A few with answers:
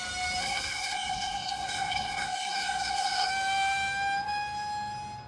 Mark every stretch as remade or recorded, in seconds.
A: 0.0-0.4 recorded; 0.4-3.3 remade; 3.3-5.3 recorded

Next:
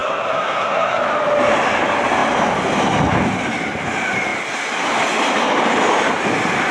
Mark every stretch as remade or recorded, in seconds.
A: 0.0-1.0 remade; 1.0-6.7 recorded